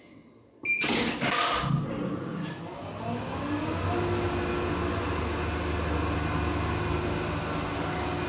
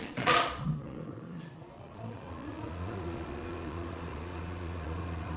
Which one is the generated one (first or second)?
second